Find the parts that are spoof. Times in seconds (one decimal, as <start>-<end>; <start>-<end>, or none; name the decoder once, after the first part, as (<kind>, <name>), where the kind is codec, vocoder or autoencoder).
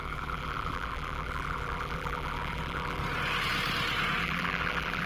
0.0-3.0 (vocoder, BigVGAN v2); 4.2-5.1